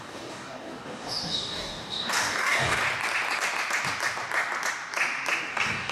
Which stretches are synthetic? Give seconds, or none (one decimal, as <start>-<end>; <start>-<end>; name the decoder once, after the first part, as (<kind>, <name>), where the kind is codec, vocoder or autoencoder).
0.0-2.8 (codec, DAC); 5.5-5.9